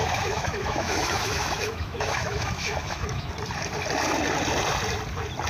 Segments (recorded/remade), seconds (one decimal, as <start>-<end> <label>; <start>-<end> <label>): 0.0-3.3 remade; 3.3-5.5 recorded